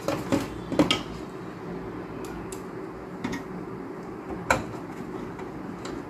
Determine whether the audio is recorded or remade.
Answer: recorded